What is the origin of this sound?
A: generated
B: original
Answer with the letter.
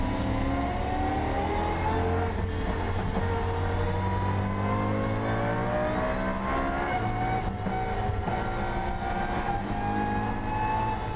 B